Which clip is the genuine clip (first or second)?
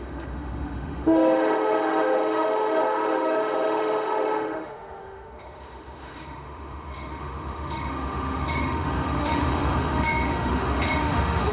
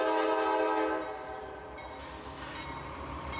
second